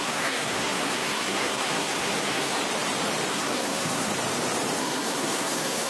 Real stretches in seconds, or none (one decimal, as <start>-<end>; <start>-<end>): 2.6-3.3; 4.1-4.8

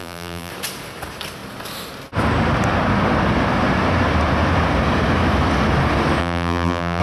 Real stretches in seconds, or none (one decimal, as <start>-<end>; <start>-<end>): 0.5-6.2

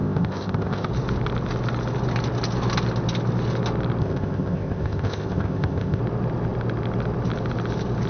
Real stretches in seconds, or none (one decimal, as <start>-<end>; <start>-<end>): 0.9-4.0; 6.0-8.1